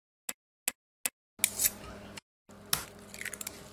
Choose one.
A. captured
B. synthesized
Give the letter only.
A